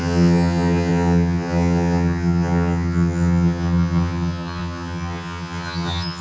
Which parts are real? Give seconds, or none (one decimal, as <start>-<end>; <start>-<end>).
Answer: none